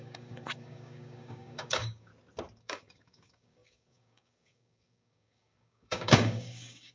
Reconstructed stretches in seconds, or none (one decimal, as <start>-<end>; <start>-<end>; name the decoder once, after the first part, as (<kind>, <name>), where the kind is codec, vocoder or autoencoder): 0.0-2.1 (codec, DAC); 2.6-6.9